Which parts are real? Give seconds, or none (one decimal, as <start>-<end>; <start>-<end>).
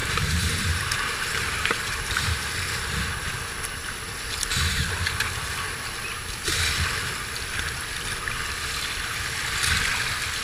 2.4-10.4